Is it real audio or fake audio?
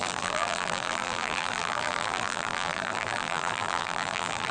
fake